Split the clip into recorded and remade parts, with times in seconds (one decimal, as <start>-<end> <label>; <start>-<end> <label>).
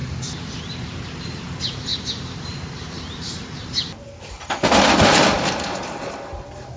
0.0-1.2 recorded; 1.2-1.9 remade; 1.9-6.0 recorded; 6.0-6.8 remade